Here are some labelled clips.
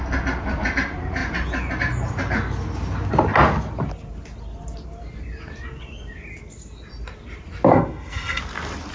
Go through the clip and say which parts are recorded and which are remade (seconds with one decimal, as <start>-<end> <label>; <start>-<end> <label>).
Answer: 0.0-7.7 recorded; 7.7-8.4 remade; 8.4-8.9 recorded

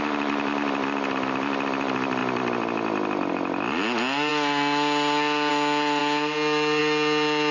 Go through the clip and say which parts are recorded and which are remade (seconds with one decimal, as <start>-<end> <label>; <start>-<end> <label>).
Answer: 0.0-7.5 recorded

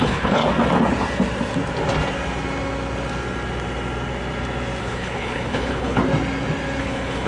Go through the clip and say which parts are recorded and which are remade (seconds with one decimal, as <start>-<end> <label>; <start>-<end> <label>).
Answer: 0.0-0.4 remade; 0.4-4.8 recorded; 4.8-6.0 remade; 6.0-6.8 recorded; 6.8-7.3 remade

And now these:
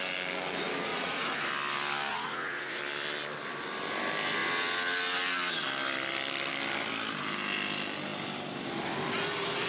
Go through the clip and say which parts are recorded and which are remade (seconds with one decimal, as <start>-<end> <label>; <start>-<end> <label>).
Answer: 0.0-0.9 recorded; 0.9-1.5 remade; 1.5-2.1 recorded; 2.1-2.8 remade; 2.8-9.7 recorded

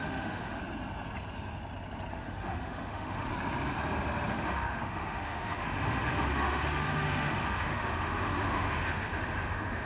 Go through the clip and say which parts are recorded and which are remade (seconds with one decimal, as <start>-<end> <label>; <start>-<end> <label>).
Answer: 0.0-0.6 remade; 0.6-2.1 recorded; 2.1-3.3 remade; 3.3-4.3 recorded; 4.3-9.9 remade

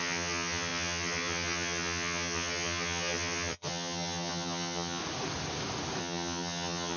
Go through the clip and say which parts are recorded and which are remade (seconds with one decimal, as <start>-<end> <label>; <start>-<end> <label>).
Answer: 0.0-5.0 remade; 5.0-6.0 recorded; 6.0-7.0 remade

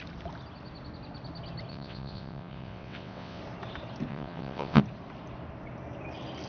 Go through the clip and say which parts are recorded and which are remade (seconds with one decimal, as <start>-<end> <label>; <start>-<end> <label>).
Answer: 0.0-1.7 recorded; 1.7-3.4 remade; 3.4-4.1 recorded; 4.1-4.8 remade; 4.8-6.5 recorded